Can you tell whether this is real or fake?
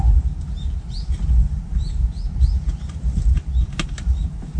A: real